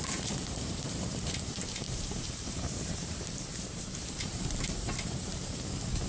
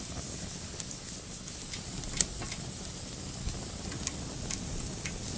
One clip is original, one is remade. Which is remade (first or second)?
first